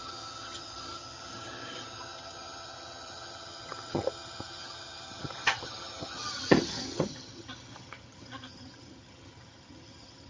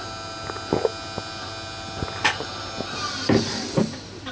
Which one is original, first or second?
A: second